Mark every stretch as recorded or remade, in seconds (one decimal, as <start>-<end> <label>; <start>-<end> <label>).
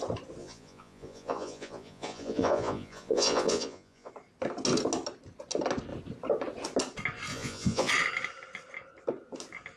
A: 0.0-0.4 recorded; 0.4-4.1 remade; 4.1-7.3 recorded; 7.3-7.9 remade; 7.9-9.8 recorded